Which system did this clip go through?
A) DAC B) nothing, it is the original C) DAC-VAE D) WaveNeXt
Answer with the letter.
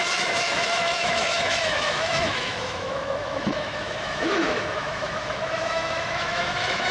C